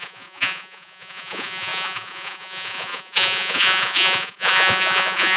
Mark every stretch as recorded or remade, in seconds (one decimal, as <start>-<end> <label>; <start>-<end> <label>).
0.0-5.4 remade